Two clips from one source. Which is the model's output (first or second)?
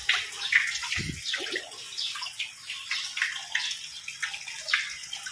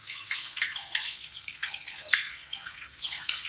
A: second